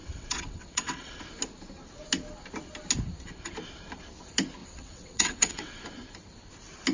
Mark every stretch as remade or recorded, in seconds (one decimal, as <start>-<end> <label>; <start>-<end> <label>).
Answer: 0.0-1.2 remade; 1.2-4.6 recorded; 4.6-5.8 remade; 5.8-6.9 recorded